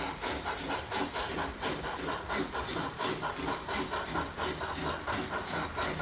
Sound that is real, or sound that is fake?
real